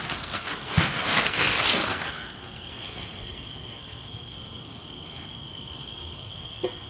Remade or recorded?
remade